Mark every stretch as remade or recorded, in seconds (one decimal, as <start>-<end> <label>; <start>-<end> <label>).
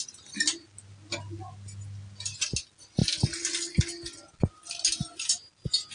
0.0-5.9 recorded